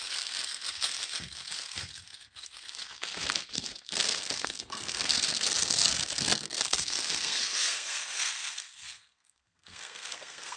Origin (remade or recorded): remade